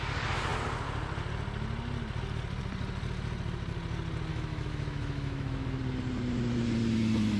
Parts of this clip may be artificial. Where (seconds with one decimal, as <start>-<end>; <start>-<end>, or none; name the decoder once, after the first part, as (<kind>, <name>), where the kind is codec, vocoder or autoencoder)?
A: 4.3-5.8 (autoencoder, DAC-VAE)